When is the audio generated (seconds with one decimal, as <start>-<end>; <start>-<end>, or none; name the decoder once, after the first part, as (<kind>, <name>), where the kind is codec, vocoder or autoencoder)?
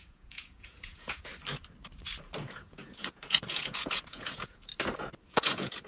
0.0-1.3 (vocoder, Vocos); 2.4-4.7; 5.3-5.9